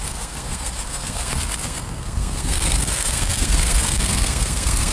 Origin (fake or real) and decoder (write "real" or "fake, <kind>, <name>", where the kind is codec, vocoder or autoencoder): fake, codec, SNAC